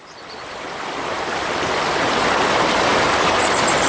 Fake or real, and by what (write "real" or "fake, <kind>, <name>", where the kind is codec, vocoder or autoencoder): real